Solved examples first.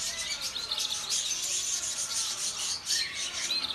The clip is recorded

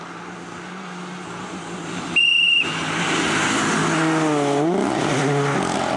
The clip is recorded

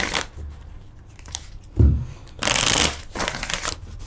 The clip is recorded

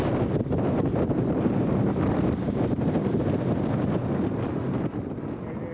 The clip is recorded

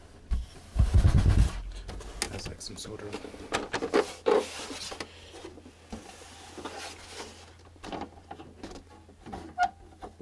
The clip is recorded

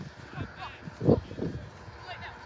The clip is recorded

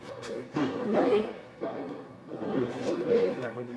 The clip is remade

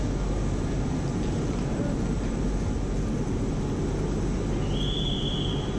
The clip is recorded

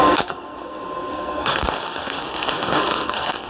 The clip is remade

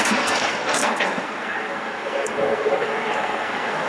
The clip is remade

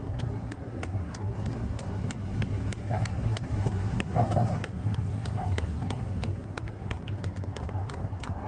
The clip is remade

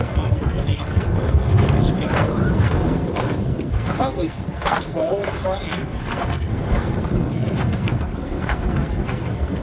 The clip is remade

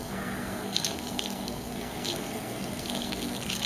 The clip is remade